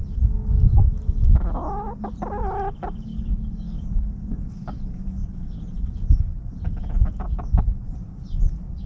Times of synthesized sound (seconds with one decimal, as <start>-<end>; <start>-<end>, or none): 3.1-4.4